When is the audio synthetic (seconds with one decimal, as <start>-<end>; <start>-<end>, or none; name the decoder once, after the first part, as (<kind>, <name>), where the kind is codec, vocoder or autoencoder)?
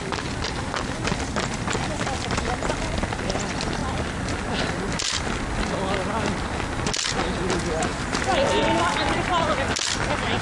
none